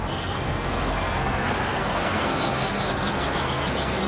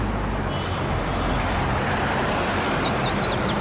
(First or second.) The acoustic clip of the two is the second